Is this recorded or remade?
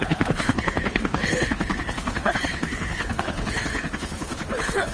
remade